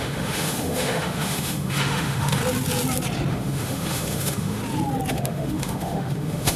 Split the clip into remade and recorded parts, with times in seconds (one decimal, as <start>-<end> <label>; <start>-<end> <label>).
0.0-2.4 remade; 2.4-3.3 recorded; 3.3-4.6 remade; 4.6-5.1 recorded; 5.1-6.6 remade